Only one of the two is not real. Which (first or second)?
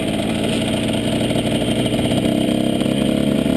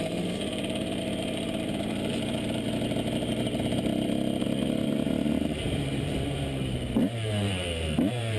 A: second